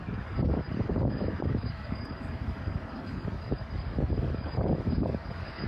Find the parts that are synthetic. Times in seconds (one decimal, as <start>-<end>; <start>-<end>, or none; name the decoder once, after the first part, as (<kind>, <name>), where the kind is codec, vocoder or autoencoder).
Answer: 0.0-5.7 (codec, DAC)